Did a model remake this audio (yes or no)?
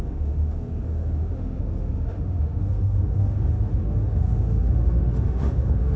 yes